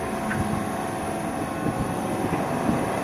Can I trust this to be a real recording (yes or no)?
yes